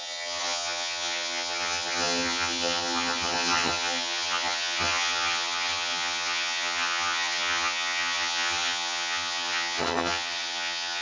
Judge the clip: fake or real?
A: fake